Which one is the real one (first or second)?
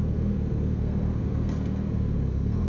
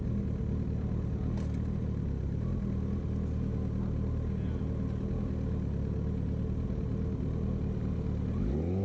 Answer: second